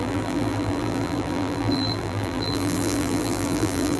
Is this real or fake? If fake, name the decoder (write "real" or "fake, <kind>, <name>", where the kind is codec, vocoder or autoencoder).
fake, vocoder, BigVGAN v2